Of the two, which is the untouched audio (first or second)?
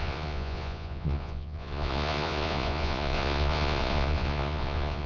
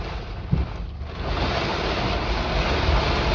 second